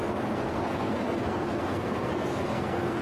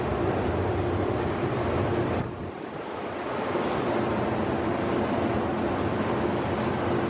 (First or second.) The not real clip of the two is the first